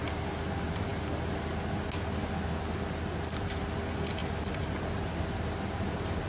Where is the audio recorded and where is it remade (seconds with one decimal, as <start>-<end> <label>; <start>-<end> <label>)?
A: 0.0-6.3 recorded